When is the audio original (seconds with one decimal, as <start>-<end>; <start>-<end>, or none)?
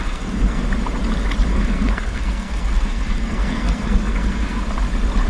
0.6-1.5; 4.6-5.3